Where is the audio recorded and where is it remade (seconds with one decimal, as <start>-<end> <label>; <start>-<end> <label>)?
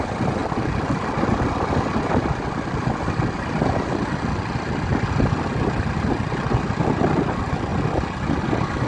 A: 0.0-8.9 recorded